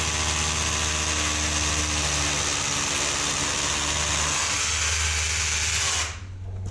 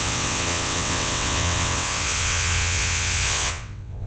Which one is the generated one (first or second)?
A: second